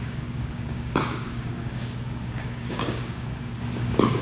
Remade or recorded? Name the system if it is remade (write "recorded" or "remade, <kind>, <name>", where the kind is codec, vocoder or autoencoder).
remade, codec, DAC